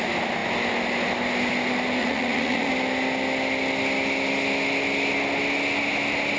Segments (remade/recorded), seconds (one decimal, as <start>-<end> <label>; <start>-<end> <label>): 0.0-2.0 recorded; 2.0-2.7 remade; 2.7-6.4 recorded